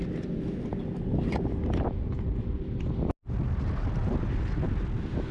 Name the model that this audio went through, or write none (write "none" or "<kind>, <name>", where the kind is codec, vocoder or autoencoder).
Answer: none